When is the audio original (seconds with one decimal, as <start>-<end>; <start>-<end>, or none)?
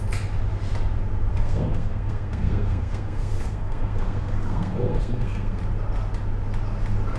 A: 0.0-1.3; 5.6-7.2